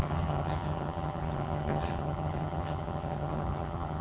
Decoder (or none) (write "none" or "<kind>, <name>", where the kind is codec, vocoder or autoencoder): vocoder, HiFi-GAN